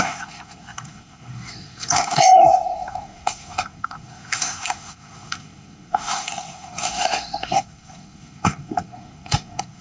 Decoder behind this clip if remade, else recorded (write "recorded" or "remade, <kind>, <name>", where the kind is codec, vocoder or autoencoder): remade, codec, SNAC